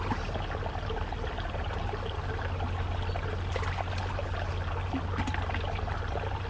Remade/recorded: recorded